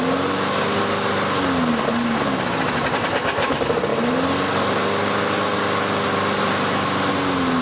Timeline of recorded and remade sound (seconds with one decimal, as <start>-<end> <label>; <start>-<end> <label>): 0.0-7.6 recorded